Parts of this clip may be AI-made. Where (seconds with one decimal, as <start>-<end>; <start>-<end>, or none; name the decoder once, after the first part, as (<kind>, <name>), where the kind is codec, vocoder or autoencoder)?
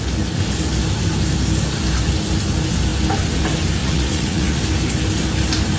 3.8-4.6 (vocoder, Vocos)